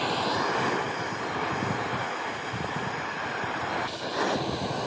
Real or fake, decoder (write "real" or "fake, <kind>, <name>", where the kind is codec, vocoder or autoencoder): real